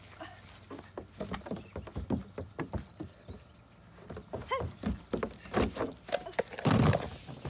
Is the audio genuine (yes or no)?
yes